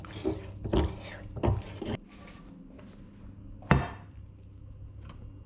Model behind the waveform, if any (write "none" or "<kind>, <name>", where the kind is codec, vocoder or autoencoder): none